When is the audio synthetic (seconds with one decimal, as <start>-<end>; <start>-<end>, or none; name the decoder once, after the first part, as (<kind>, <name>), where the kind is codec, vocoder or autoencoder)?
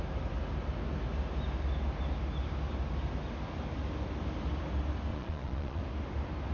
5.1-5.8 (vocoder, Vocos)